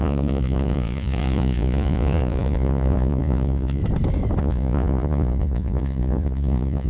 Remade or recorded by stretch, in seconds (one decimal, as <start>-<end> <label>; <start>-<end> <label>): 0.0-3.8 remade; 3.8-4.4 recorded; 4.4-6.9 remade

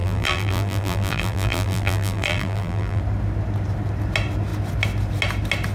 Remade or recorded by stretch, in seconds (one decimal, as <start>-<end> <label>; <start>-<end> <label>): 0.0-3.0 remade; 3.0-5.7 recorded